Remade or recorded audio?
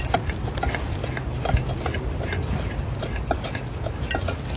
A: recorded